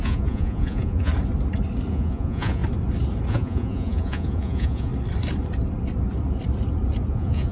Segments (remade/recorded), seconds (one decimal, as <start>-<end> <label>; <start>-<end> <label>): 0.0-1.1 remade; 1.1-1.9 recorded; 1.9-2.6 remade; 2.6-3.3 recorded; 3.3-4.9 remade; 4.9-7.1 recorded; 7.1-7.5 remade